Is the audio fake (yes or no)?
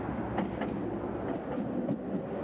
no